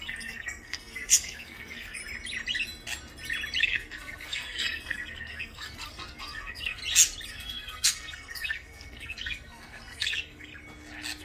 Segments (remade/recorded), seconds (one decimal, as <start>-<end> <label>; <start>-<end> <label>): 0.0-2.0 remade; 2.0-3.6 recorded; 3.6-6.8 remade; 6.8-7.3 recorded; 7.3-10.5 remade; 10.5-11.2 recorded